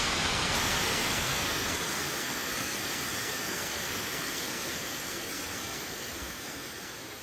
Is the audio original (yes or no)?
no